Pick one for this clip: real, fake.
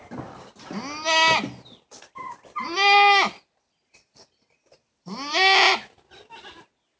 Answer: real